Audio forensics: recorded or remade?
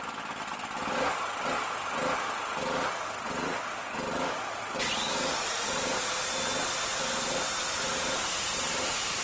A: recorded